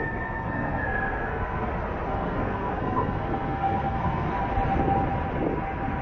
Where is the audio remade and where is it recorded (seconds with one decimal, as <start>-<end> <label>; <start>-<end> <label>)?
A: 0.0-1.7 remade; 1.7-2.1 recorded; 2.1-4.3 remade; 4.3-6.0 recorded